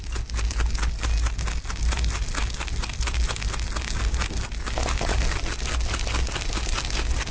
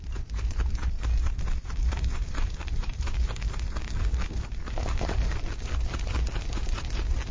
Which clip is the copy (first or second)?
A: second